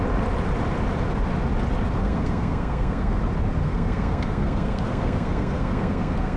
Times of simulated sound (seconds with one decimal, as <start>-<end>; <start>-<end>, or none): 2.0-3.2; 3.6-6.4